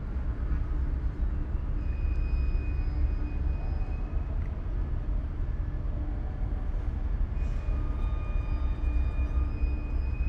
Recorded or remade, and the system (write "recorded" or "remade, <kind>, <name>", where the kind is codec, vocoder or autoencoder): recorded